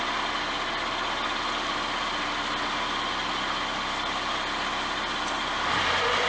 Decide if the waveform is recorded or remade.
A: recorded